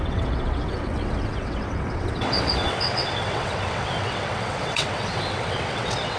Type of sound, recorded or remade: remade